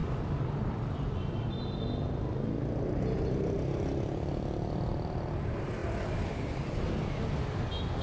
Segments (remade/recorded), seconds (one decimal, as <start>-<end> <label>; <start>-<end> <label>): 0.0-1.6 remade; 1.6-8.0 recorded